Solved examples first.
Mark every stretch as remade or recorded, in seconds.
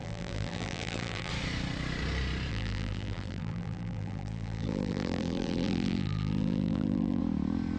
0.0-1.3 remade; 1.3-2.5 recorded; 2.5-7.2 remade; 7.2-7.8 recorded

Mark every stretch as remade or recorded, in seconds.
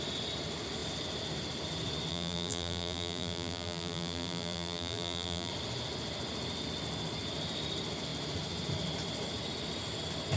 0.0-2.1 recorded; 2.1-5.5 remade; 5.5-10.4 recorded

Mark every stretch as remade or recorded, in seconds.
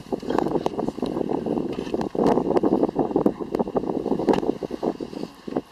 0.0-3.4 remade; 3.4-5.7 recorded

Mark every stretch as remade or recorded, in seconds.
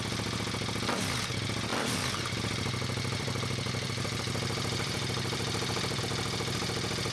0.0-1.7 recorded; 1.7-6.0 remade; 6.0-7.1 recorded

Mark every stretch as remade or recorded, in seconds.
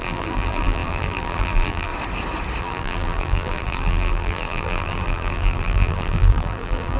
0.0-1.9 remade; 1.9-2.6 recorded; 2.6-7.0 remade